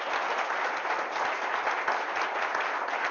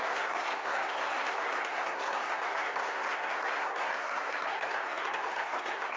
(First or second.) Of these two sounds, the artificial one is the second